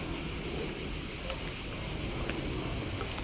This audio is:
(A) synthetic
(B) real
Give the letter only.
B